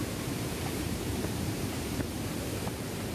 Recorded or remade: remade